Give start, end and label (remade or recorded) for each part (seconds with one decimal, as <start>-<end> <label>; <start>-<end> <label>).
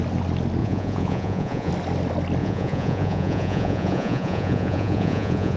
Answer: 0.0-0.6 recorded; 0.6-1.7 remade; 1.7-2.4 recorded; 2.4-5.6 remade